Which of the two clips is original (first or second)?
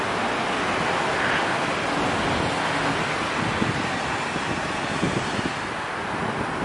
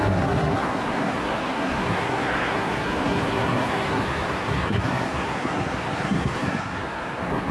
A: first